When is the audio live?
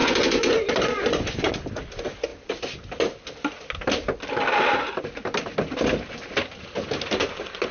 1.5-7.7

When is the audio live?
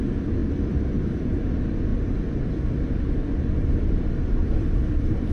0.0-0.4; 0.9-1.9